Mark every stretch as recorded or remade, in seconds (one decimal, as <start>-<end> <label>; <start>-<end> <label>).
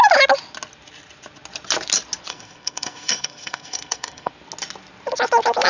0.0-2.3 recorded; 2.3-4.3 remade; 4.3-5.7 recorded